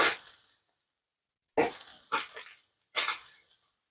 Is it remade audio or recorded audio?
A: recorded